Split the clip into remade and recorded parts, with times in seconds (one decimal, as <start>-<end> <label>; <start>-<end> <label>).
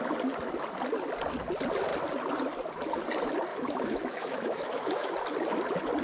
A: 0.0-3.5 recorded; 3.5-5.1 remade; 5.1-6.0 recorded